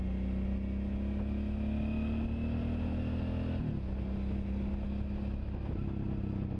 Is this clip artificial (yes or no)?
no